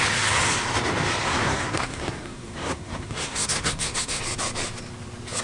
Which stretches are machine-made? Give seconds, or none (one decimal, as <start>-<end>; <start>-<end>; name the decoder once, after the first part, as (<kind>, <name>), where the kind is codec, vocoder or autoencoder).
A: 1.2-4.2 (codec, SNAC)